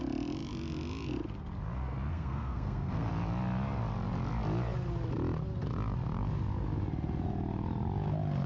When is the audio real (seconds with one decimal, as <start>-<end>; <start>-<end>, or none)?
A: 0.0-2.1; 3.1-8.5